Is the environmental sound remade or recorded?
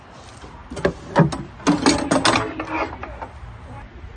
recorded